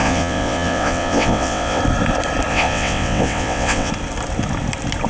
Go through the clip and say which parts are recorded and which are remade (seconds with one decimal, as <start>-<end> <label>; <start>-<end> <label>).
0.0-1.8 remade; 1.8-2.5 recorded; 2.5-3.9 remade; 3.9-5.1 recorded